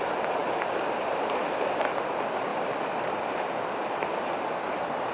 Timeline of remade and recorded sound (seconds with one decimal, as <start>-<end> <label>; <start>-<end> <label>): 0.0-5.1 recorded